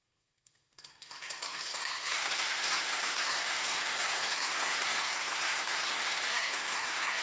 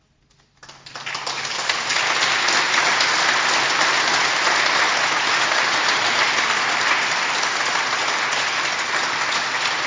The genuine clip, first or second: second